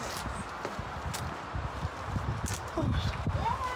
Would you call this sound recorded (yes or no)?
yes